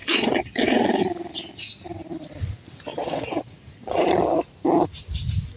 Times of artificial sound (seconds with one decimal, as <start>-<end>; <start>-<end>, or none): 0.0-1.0; 2.9-4.1